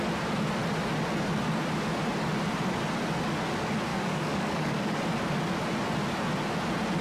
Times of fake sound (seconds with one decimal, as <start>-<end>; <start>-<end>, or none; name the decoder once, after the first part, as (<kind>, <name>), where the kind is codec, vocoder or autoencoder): 3.9-5.0 (codec, DAC)